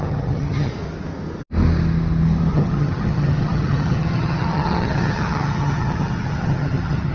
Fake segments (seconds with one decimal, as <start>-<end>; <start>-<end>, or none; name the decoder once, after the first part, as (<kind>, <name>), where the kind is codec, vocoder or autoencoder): 0.0-0.7 (vocoder, HiFi-GAN); 2.5-7.1